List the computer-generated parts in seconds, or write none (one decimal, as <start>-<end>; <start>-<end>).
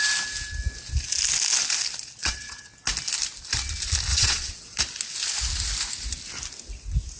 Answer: 2.2-2.7; 4.1-4.8